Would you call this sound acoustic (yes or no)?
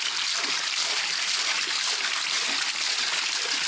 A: yes